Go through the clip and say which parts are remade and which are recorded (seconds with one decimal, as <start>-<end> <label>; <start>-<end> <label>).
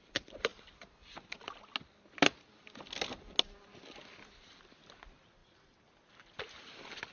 0.0-7.1 recorded